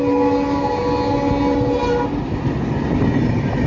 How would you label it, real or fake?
real